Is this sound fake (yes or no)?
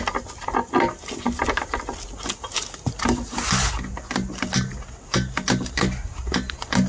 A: no